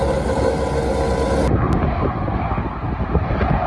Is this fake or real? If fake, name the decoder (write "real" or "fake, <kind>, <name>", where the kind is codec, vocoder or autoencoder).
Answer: real